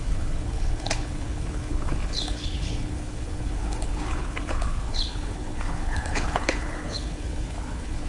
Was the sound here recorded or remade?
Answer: remade